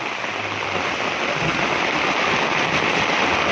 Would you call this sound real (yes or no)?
yes